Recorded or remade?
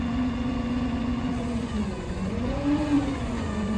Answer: remade